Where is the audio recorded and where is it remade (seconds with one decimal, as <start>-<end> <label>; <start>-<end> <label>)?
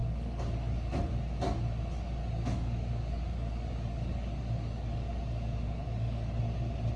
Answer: 0.0-1.0 remade; 1.0-2.2 recorded; 2.2-6.4 remade; 6.4-7.0 recorded